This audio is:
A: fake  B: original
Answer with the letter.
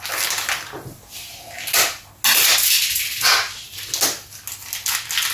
B